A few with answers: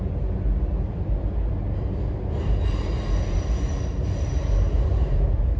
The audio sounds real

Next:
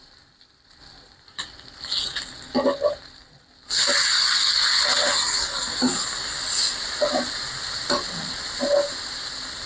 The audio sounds real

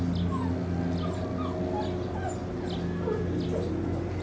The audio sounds real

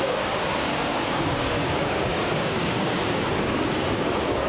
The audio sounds fake